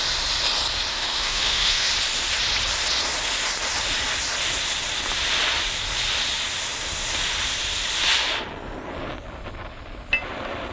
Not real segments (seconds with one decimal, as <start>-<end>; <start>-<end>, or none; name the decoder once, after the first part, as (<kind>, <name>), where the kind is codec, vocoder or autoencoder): 0.9-1.9 (autoencoder, DAC-VAE)